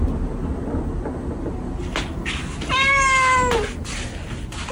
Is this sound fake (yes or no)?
no